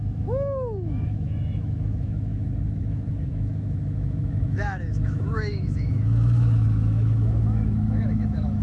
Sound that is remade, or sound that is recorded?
remade